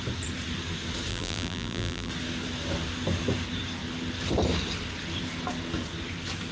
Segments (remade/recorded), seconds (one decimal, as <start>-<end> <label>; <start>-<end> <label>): 0.0-1.1 recorded; 1.1-2.1 remade; 2.1-6.5 recorded